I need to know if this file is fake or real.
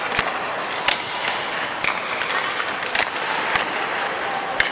real